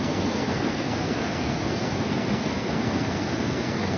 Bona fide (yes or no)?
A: no